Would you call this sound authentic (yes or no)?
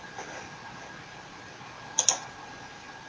yes